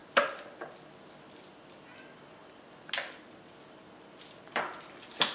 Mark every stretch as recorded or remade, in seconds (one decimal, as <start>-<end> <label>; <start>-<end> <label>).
0.0-5.3 recorded